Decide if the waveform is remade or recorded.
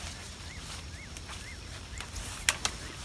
recorded